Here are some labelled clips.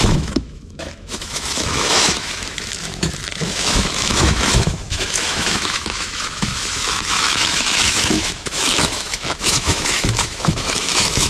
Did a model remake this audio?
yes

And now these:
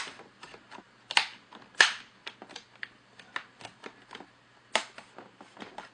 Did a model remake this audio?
no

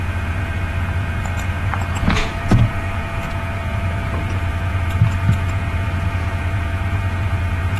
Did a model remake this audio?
yes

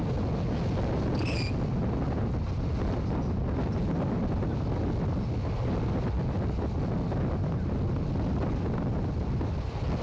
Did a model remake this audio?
no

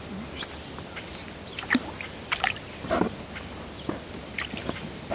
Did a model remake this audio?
no